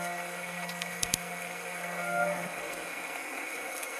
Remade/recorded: remade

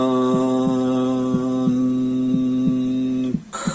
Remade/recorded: recorded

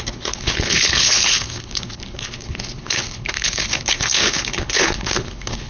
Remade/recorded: remade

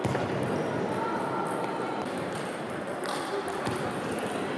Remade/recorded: recorded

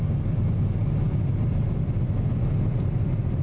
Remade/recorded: recorded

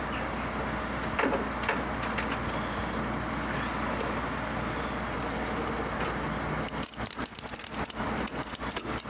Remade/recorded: recorded